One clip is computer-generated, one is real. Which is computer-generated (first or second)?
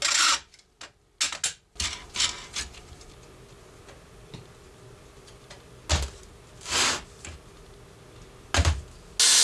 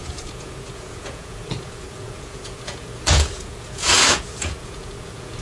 second